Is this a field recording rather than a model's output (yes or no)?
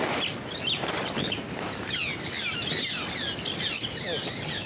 yes